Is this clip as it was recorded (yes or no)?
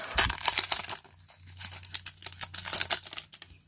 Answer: yes